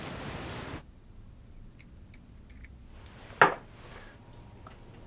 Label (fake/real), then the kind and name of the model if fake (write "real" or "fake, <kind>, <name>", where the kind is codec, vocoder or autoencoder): real